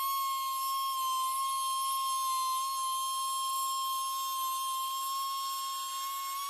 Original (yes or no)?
yes